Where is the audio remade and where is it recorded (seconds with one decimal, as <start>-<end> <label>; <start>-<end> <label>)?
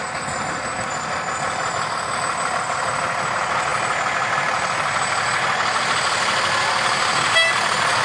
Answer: 0.0-8.0 recorded